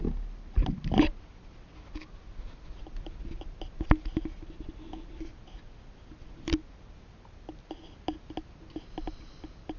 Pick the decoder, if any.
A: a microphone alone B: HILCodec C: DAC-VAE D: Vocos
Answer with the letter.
A